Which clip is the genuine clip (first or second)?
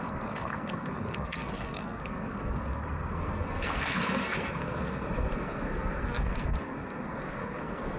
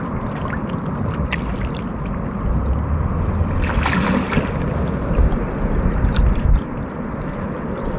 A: second